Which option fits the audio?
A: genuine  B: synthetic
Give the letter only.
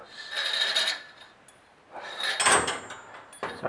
A